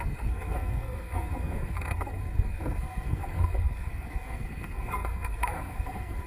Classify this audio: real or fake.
fake